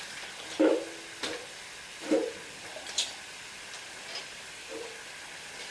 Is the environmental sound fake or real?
real